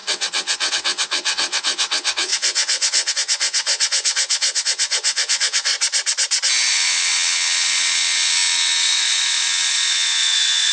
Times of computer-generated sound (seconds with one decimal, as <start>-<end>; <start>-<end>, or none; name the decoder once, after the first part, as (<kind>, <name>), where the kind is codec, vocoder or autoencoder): 0.0-5.7 (vocoder, WaveNeXt); 6.7-10.7